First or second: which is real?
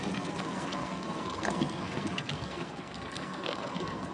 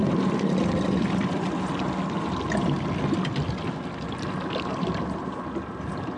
second